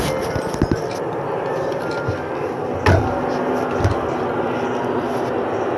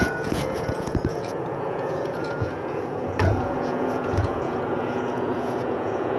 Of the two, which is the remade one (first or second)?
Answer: second